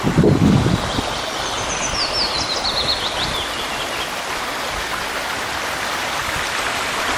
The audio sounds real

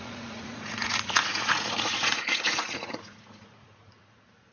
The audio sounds fake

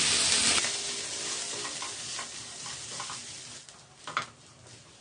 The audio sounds real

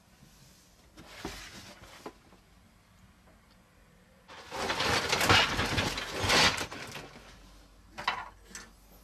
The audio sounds real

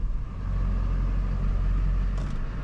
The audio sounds real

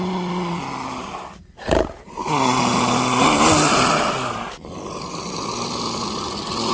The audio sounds real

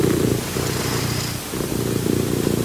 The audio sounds real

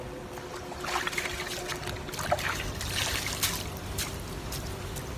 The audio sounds real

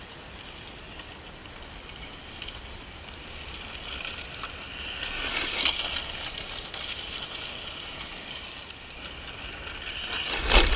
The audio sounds real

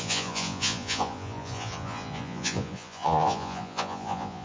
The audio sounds fake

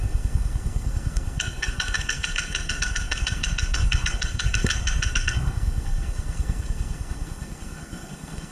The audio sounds fake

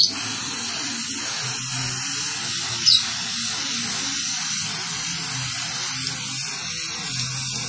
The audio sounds real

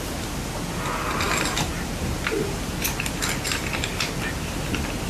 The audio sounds real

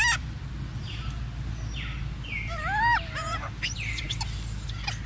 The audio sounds real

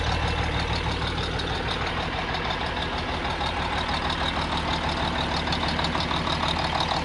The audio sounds real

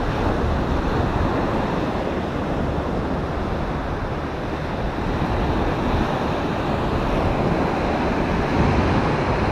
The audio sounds real